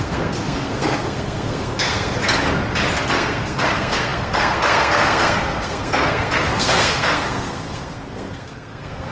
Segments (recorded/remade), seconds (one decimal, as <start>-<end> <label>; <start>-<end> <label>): 0.0-2.1 remade; 2.1-3.1 recorded; 3.1-9.1 remade